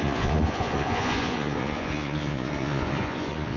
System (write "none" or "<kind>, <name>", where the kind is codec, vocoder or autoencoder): vocoder, Vocos